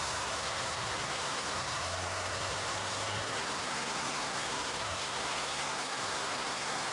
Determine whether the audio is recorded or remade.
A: remade